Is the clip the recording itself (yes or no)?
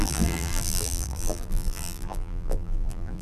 no